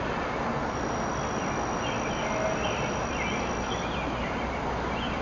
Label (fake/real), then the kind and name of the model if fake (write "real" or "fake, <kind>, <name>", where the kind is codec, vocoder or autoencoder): real